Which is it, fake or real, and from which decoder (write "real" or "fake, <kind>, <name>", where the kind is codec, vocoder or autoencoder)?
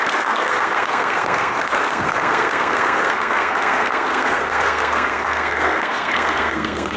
fake, codec, SNAC